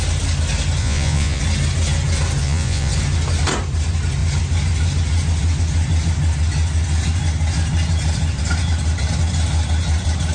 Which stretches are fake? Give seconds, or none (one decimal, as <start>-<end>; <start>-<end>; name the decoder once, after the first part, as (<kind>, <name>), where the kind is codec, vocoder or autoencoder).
0.8-1.4 (vocoder, Vocos); 2.4-2.9